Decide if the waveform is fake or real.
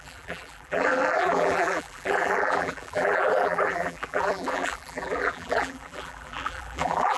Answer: fake